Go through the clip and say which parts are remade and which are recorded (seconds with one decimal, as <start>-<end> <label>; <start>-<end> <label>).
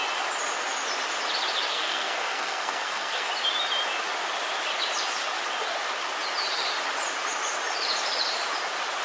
0.0-1.7 recorded; 1.7-3.3 remade; 3.3-9.0 recorded